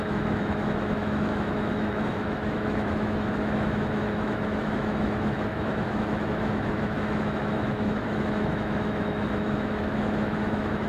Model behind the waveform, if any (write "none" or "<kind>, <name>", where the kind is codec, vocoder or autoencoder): autoencoder, DAC-VAE